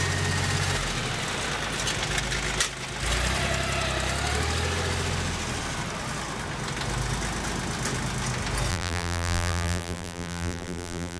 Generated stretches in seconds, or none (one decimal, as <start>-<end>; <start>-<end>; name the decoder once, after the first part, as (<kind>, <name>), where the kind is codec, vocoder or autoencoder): 8.7-11.2 (vocoder, BigVGAN v2)